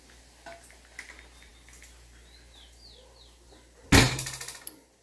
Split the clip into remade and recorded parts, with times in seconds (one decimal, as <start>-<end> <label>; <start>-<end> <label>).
0.0-5.0 recorded